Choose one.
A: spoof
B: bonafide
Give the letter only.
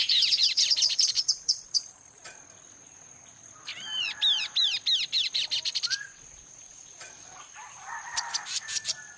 A